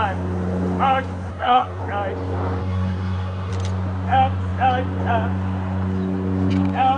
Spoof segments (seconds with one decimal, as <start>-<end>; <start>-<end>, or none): 1.3-1.8; 2.6-3.5